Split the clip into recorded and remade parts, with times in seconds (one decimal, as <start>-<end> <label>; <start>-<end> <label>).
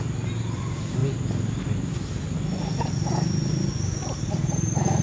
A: 0.0-5.0 recorded